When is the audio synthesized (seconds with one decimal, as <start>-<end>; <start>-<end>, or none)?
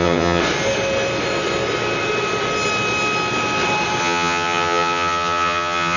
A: 0.0-0.4; 4.0-6.0